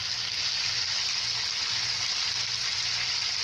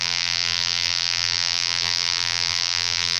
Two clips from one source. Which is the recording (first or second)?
first